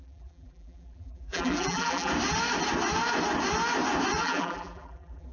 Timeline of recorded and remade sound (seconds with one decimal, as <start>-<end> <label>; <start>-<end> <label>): 0.0-2.1 remade; 2.1-4.2 recorded; 4.2-5.3 remade